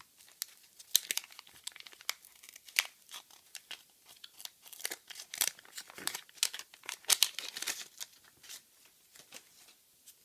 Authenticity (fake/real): real